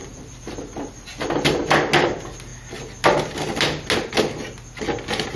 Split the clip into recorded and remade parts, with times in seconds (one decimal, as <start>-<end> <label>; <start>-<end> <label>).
0.0-0.9 remade; 0.9-5.4 recorded